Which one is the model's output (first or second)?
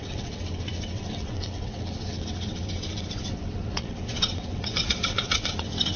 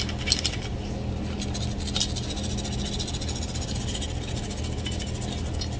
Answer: first